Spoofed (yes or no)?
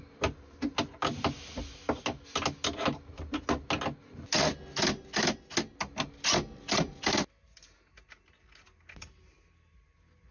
no